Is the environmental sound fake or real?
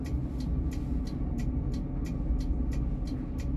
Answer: real